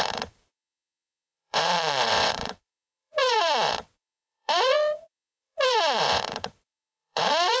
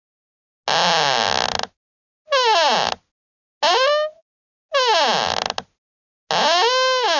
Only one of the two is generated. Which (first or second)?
first